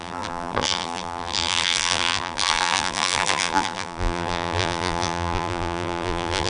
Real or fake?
fake